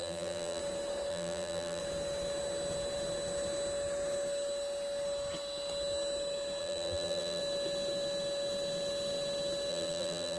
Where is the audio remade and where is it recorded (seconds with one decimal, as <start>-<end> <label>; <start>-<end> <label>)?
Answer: 0.0-0.6 remade; 0.6-1.1 recorded; 1.1-1.8 remade; 1.8-6.6 recorded; 6.6-7.4 remade; 7.4-9.7 recorded; 9.7-10.4 remade